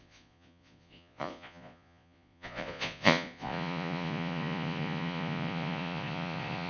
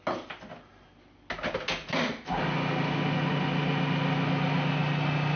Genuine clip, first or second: second